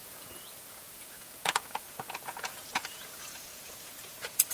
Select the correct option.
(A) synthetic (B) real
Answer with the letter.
A